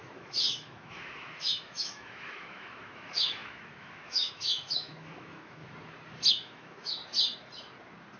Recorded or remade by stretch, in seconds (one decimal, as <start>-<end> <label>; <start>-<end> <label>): 0.0-5.6 remade; 5.6-6.3 recorded; 6.3-7.0 remade; 7.0-8.2 recorded